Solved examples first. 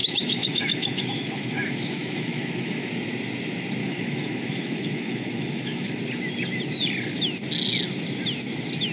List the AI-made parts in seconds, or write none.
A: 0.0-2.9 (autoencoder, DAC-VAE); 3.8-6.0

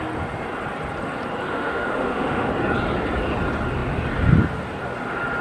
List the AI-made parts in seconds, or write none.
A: 1.5-2.5 (autoencoder, DAC-VAE)

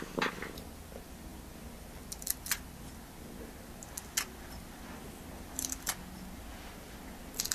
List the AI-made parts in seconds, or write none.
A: none

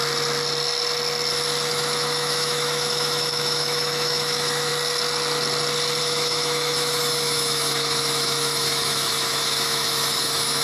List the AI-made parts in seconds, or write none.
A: 1.7-4.7 (autoencoder, DAC-VAE); 6.0-10.6